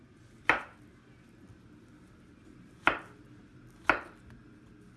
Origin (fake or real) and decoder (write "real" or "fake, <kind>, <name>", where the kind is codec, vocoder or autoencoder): real